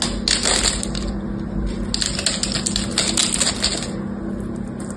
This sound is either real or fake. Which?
real